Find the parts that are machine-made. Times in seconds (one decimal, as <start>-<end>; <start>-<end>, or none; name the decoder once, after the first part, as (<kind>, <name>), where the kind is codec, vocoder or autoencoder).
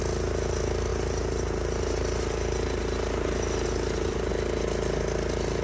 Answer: 0.9-4.3 (vocoder, BigVGAN v2)